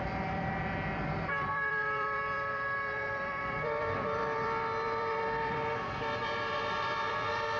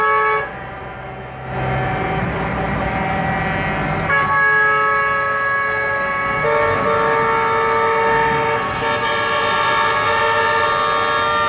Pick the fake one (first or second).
first